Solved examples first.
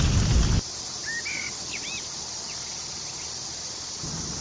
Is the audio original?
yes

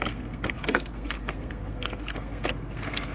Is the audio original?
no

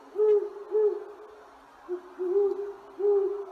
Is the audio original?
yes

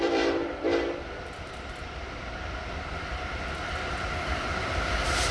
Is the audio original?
no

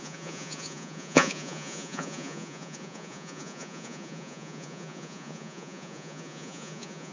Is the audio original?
no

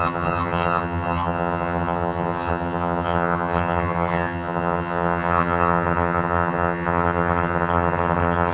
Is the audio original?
no